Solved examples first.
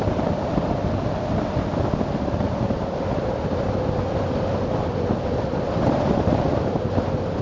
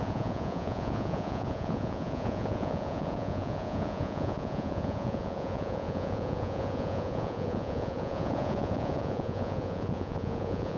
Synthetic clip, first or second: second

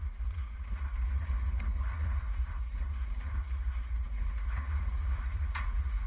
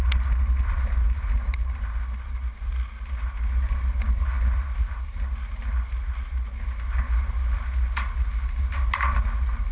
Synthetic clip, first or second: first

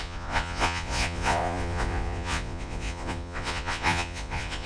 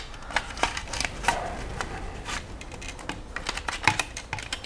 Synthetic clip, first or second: first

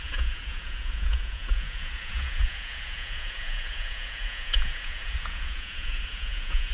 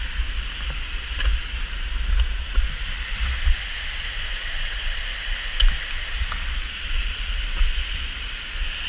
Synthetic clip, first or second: first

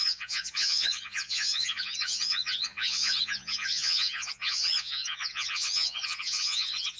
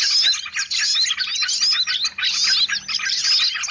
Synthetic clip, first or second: first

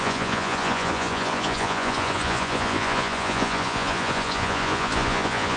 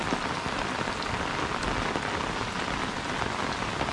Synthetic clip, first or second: first